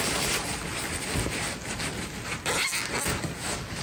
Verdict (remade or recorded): recorded